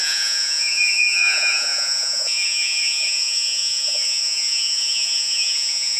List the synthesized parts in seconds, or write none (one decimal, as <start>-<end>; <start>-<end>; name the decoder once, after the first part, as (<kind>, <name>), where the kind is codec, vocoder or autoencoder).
0.0-6.0 (vocoder, Vocos)